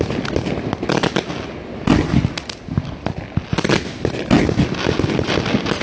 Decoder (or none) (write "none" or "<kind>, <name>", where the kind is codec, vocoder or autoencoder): none